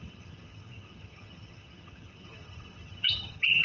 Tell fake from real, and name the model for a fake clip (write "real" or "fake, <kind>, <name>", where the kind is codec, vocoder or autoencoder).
fake, vocoder, HiFi-GAN